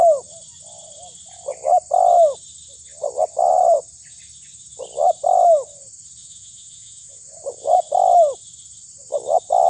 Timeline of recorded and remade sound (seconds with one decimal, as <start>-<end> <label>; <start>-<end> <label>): 0.0-6.2 recorded; 6.2-7.8 remade; 7.8-9.7 recorded